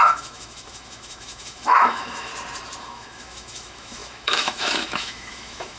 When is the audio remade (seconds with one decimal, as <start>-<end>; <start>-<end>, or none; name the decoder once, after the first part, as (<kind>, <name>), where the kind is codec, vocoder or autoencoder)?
0.0-2.3 (autoencoder, DAC-VAE); 2.8-5.8